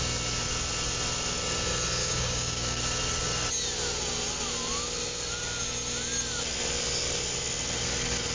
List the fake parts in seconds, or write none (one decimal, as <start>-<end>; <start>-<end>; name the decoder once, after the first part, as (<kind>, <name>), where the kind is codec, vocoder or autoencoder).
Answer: 2.0-2.8 (codec, DAC)

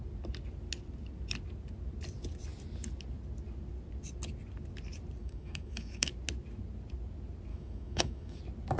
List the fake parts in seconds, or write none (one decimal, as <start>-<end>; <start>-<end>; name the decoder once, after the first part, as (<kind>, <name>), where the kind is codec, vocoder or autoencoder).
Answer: 5.2-6.1 (autoencoder, DAC-VAE); 7.5-8.4

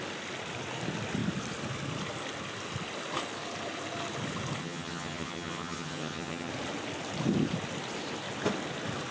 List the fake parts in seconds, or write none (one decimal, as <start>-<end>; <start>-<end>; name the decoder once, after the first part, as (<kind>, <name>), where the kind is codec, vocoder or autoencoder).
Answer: 4.6-6.5 (vocoder, HiFi-GAN)